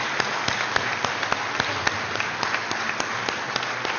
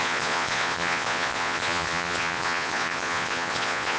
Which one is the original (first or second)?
first